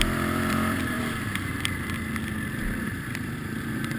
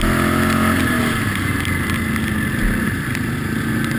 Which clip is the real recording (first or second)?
second